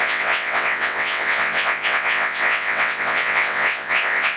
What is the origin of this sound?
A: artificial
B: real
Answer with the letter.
A